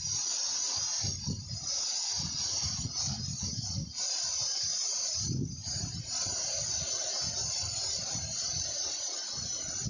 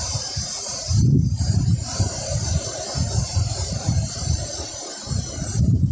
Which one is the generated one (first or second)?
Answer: second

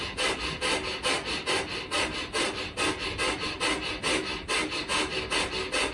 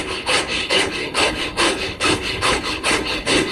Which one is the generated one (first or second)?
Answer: second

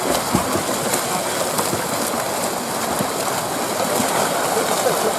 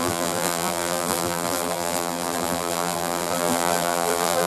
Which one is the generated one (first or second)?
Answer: second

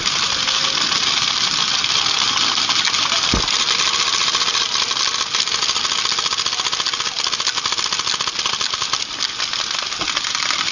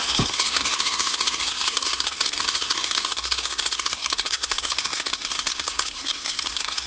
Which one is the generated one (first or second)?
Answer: second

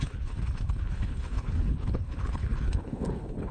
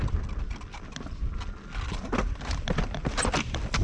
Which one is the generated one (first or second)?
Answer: first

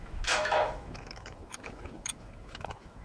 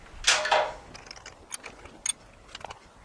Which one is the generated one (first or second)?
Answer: first